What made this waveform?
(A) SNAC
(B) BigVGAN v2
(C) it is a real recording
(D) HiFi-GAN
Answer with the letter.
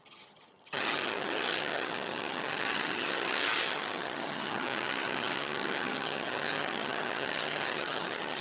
D